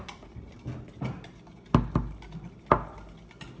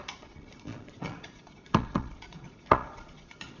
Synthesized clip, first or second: second